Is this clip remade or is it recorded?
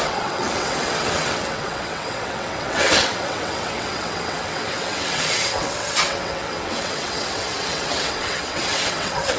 remade